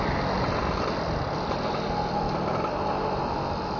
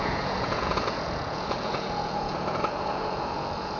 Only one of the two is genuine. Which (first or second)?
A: first